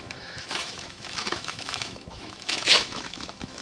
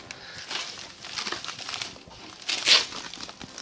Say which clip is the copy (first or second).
first